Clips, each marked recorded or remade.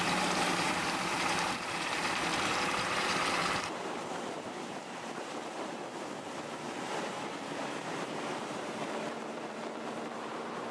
remade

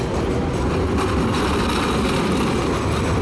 recorded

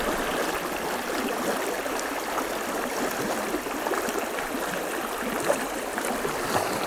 recorded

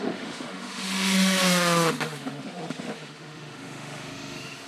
remade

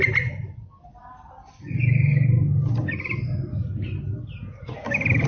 recorded